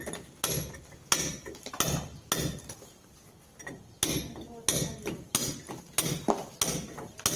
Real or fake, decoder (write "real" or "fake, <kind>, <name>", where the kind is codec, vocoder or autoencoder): real